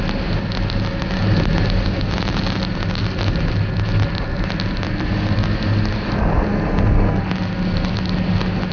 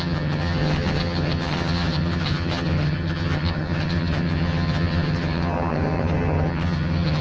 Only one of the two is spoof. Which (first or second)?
second